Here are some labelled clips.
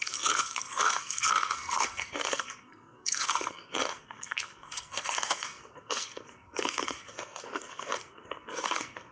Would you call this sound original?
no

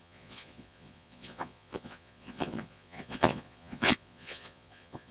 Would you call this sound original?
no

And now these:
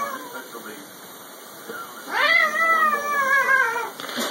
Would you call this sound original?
no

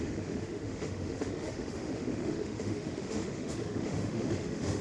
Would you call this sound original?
no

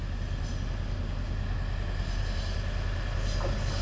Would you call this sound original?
yes